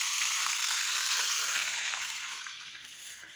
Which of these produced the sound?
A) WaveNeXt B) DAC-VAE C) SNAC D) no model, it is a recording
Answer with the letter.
C